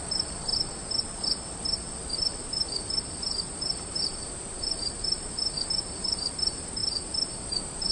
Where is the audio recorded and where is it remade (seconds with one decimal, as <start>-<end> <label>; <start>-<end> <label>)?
0.0-0.5 remade; 0.5-2.1 recorded; 2.1-6.8 remade; 6.8-7.5 recorded; 7.5-7.9 remade